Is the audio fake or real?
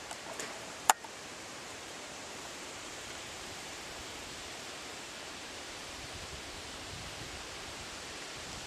fake